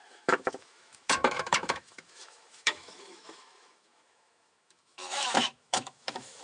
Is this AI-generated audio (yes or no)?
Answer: yes